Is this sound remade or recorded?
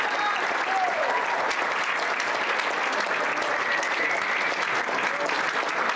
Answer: recorded